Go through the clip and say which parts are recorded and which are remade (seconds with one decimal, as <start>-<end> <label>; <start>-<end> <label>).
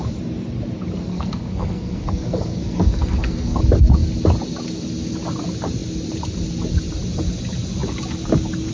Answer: 0.0-1.1 recorded; 1.1-3.6 remade; 3.6-8.7 recorded